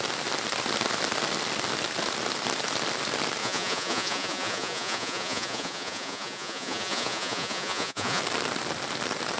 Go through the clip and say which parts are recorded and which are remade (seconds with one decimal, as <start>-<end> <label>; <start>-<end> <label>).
0.0-3.4 recorded; 3.4-8.2 remade; 8.2-9.4 recorded